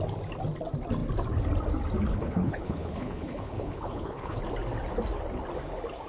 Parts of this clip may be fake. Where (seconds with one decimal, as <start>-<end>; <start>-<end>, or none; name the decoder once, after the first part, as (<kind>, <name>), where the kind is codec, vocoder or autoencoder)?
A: 2.1-4.4 (codec, HILCodec)